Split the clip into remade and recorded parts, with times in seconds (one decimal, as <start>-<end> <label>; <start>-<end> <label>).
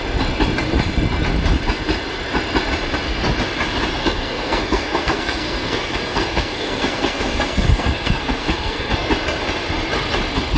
0.0-4.0 recorded; 4.0-8.9 remade; 8.9-10.6 recorded